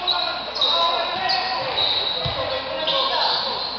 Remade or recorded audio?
recorded